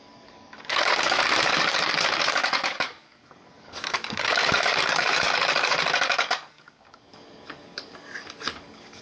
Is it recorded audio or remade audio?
remade